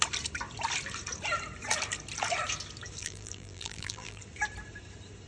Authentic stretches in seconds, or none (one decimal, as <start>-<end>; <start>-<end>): 0.0-3.0; 4.2-5.3